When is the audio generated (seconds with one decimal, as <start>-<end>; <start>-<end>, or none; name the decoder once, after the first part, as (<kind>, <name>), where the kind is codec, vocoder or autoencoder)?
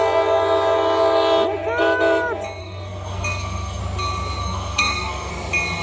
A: 2.6-3.8 (codec, SNAC); 4.4-5.3